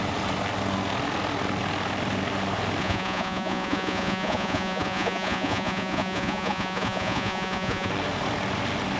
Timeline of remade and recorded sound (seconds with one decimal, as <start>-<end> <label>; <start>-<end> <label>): 0.0-2.8 recorded; 2.8-7.9 remade; 7.9-9.0 recorded